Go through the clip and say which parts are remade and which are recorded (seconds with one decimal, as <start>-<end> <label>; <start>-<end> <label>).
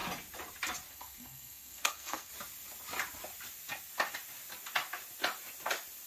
0.0-0.9 recorded; 0.9-2.3 remade; 2.3-6.1 recorded